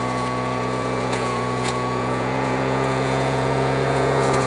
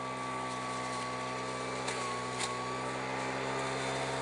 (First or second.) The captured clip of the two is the second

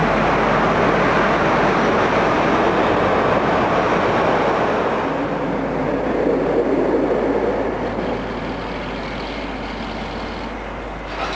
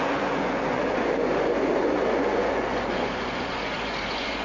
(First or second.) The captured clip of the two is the first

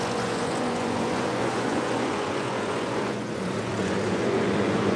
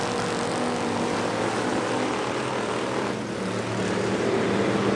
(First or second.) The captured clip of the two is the second